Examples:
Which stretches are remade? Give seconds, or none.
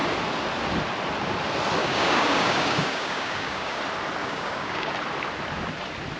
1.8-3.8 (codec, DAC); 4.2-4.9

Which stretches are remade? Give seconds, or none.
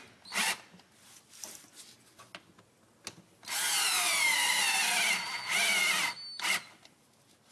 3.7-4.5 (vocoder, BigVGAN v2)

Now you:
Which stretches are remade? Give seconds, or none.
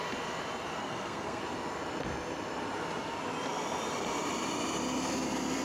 0.8-1.4 (codec, SNAC)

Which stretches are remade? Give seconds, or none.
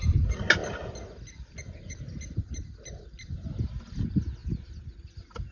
none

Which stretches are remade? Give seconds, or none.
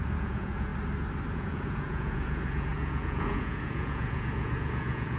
0.0-0.7 (vocoder, Vocos); 1.3-5.2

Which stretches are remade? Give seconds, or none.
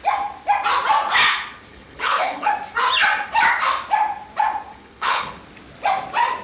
1.7-2.5 (codec, HILCodec); 4.7-5.4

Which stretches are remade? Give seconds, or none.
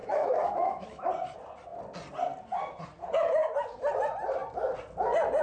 0.0-1.1 (autoencoder, DAC-VAE)